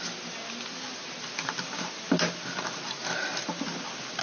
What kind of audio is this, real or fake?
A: real